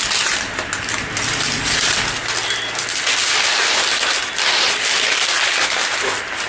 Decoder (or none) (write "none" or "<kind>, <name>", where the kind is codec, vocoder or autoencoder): none